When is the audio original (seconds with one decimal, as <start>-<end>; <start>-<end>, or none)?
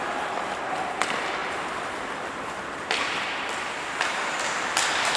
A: 0.0-1.4; 4.5-5.2